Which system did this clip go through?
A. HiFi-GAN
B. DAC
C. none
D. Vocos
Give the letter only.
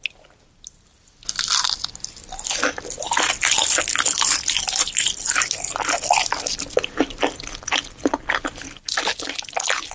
C